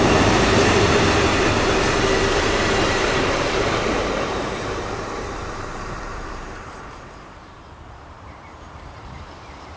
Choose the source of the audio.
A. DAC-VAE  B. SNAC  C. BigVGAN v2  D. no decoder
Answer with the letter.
C